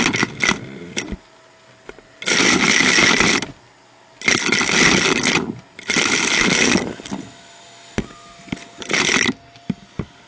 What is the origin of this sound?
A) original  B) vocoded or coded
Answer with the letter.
A